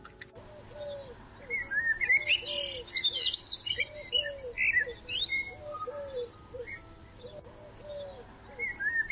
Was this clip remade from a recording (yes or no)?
no